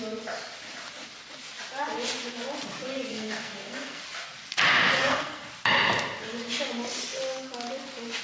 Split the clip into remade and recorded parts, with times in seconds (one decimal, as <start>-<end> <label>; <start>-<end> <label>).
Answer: 0.0-3.1 recorded; 3.1-4.0 remade; 4.0-5.0 recorded; 5.0-5.5 remade; 5.5-8.2 recorded